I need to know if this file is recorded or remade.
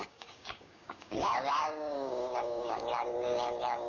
remade